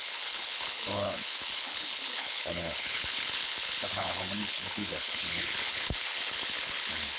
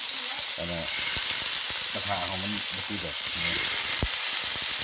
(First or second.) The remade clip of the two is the first